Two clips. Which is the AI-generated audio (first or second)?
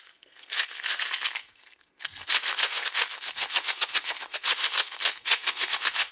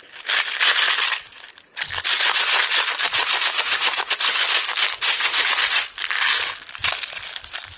first